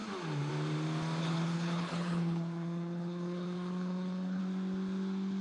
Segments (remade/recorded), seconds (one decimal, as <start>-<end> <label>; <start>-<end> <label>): 0.0-1.2 recorded; 1.2-4.4 remade; 4.4-5.4 recorded